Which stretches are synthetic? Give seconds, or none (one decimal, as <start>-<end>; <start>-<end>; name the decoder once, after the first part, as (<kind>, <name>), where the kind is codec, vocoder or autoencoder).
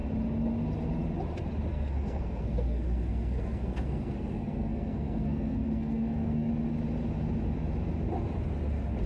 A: 1.7-6.5 (codec, SNAC)